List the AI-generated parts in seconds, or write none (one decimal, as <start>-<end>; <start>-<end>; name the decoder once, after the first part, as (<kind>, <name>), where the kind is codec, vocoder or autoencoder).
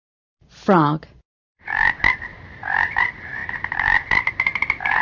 0.0-5.0 (vocoder, BigVGAN v2)